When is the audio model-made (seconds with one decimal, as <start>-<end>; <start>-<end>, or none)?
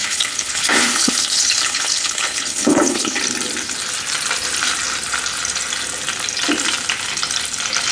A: 0.0-3.2